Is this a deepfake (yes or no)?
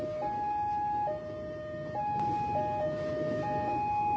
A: no